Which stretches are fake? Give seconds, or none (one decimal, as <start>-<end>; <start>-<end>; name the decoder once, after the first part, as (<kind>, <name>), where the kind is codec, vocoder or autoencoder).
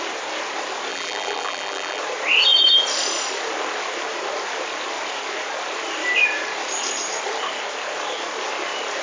0.9-2.0 (vocoder, BigVGAN v2)